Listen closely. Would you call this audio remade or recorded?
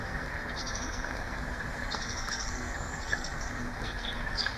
remade